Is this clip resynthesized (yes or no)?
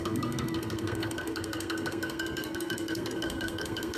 yes